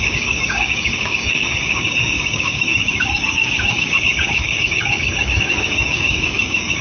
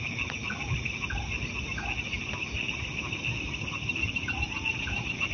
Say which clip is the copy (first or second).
first